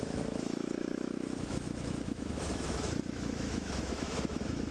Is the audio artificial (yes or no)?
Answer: yes